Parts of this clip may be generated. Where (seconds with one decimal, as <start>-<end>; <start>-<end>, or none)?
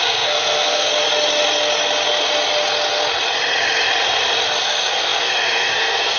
0.0-0.9; 4.6-6.2